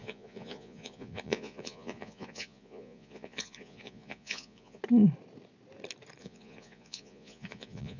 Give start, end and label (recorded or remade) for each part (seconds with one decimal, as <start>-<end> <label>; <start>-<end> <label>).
0.0-4.8 remade; 4.8-6.2 recorded; 6.2-8.0 remade